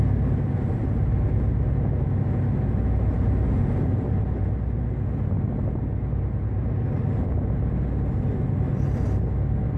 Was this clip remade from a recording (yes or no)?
no